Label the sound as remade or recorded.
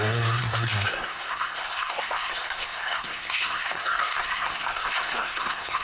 remade